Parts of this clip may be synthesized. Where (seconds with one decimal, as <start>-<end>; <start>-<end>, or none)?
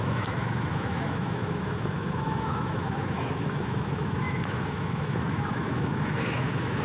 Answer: 0.0-6.8